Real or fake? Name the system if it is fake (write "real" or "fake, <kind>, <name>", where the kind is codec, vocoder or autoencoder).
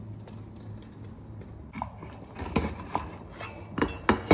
real